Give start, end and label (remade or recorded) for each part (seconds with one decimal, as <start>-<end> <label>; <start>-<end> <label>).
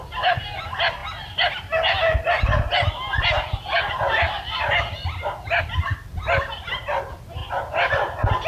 0.0-8.5 recorded